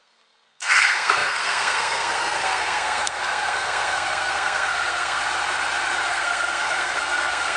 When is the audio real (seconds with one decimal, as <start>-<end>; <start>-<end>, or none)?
5.2-6.1